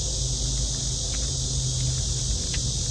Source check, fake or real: real